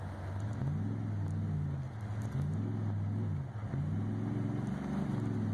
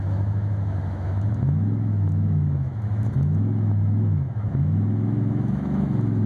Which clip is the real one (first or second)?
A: first